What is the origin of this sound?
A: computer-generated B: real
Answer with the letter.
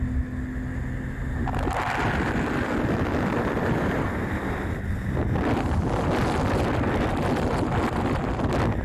B